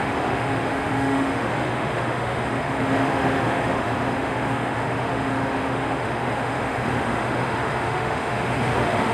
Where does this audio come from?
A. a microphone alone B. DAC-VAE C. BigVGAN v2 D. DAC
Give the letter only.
B